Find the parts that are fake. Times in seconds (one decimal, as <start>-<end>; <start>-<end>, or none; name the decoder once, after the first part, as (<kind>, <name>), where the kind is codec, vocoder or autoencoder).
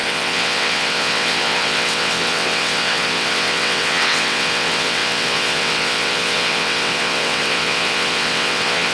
0.0-8.9 (vocoder, WaveNeXt)